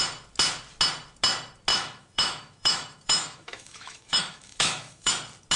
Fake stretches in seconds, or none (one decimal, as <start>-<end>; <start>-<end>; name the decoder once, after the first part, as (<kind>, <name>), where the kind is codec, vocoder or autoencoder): 1.7-5.1 (autoencoder, DAC-VAE)